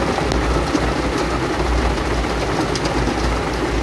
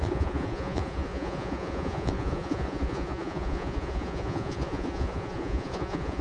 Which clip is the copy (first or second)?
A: second